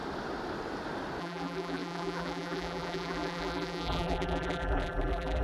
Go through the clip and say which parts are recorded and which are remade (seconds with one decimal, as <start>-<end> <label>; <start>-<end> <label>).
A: 0.0-1.2 recorded; 1.2-5.4 remade